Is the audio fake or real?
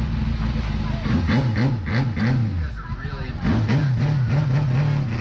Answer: real